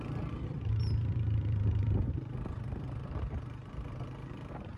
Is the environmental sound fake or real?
fake